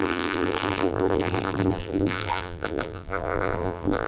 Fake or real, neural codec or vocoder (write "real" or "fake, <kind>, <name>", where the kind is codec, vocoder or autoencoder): fake, vocoder, BigVGAN v2